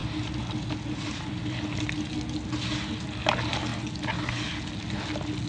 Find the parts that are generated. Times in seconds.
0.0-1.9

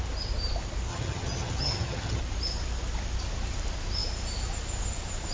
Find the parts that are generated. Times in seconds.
0.9-2.2

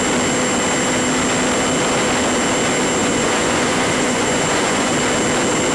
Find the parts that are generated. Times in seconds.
3.0-4.9

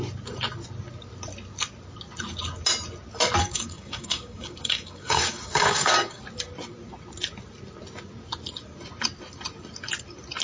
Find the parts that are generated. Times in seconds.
3.4-6.2

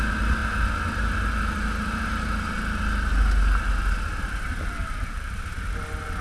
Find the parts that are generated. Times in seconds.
4.8-5.4

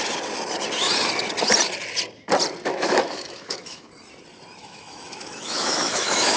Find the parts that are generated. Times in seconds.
2.7-3.9; 4.6-6.4